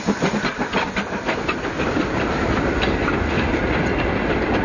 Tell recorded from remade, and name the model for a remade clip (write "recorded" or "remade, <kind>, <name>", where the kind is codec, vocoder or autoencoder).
recorded